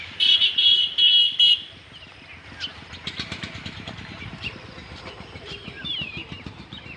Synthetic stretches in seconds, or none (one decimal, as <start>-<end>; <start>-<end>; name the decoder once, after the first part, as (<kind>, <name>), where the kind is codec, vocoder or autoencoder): 0.0-0.7 (vocoder, BigVGAN v2); 3.1-7.0